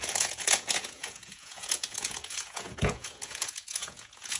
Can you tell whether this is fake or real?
fake